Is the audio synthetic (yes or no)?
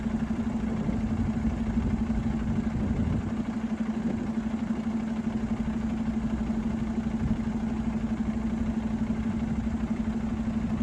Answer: no